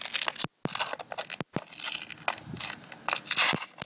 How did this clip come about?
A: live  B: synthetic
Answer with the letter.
A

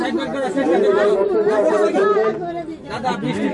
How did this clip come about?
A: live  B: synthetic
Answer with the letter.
A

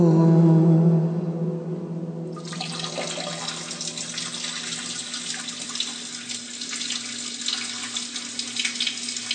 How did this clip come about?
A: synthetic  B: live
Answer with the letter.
B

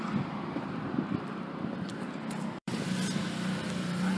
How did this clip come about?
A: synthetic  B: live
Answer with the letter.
A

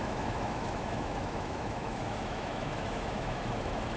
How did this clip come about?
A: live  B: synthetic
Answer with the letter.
B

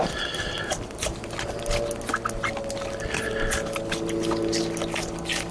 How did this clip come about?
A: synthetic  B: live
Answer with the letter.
B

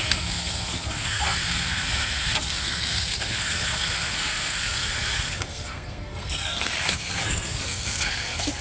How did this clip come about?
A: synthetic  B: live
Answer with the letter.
A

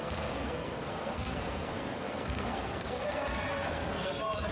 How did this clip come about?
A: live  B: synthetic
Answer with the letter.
B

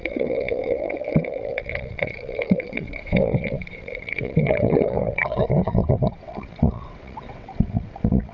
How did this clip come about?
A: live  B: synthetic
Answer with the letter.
B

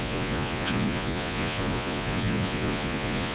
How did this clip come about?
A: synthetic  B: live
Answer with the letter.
A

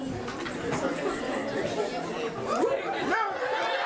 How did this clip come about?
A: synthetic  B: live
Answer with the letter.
B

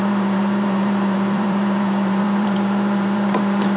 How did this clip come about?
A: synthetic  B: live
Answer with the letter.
A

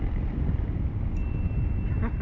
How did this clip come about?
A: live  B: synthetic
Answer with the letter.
A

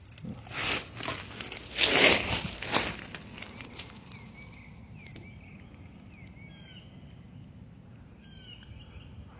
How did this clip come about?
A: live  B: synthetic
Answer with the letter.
A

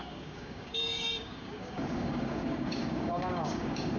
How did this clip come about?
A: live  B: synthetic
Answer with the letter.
B